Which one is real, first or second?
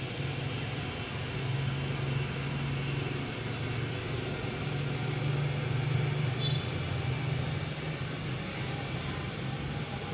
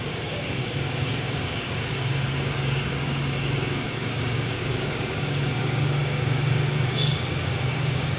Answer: first